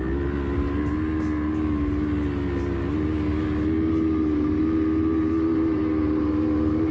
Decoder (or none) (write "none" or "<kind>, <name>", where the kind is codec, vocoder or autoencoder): none